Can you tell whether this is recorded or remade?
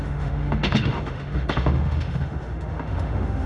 remade